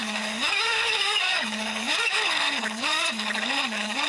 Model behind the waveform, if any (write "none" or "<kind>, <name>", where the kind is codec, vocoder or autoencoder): codec, DAC